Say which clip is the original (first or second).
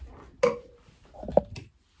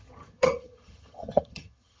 first